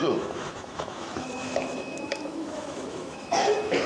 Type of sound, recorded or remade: remade